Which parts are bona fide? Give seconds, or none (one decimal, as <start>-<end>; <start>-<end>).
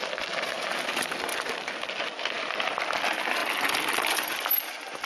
0.0-5.1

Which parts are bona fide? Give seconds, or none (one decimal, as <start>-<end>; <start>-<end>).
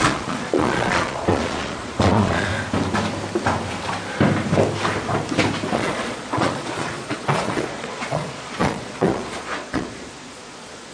2.5-5.7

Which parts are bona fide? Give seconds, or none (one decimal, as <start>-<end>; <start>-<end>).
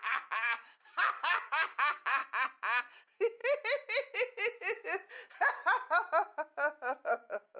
2.2-2.8; 3.4-5.1; 5.6-7.1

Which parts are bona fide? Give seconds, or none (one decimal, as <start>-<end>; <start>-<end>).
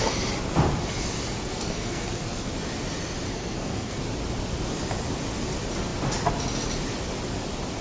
0.0-1.5; 2.5-3.3; 4.0-7.8